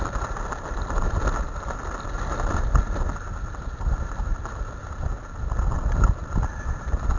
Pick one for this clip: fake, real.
real